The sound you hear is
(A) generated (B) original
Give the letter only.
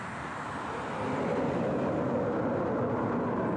B